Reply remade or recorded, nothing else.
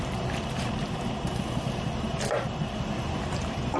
remade